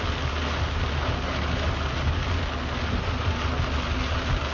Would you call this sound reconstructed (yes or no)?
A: no